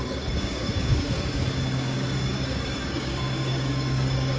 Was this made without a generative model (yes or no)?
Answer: no